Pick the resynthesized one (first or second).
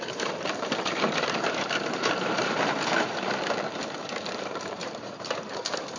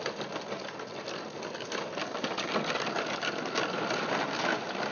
first